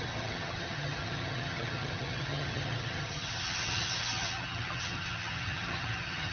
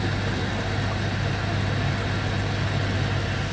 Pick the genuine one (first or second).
second